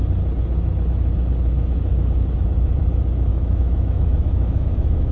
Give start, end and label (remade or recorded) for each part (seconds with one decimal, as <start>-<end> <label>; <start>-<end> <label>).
0.0-3.3 recorded; 3.3-5.1 remade